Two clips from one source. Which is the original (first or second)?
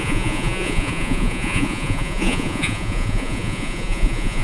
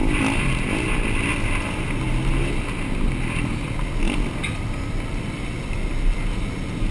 second